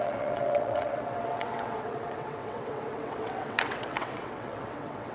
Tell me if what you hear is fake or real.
fake